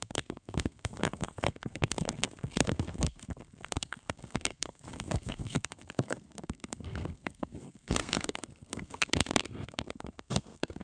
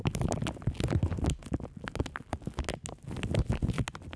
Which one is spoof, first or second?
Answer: first